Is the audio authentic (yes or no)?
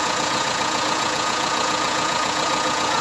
no